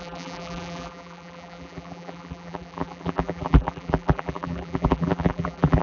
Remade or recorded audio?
remade